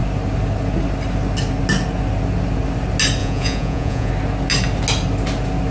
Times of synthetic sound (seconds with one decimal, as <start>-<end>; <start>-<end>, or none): 3.2-4.1